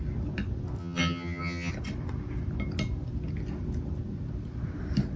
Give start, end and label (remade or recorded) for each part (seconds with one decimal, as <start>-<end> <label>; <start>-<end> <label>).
0.0-0.8 recorded; 0.8-1.7 remade; 1.7-5.2 recorded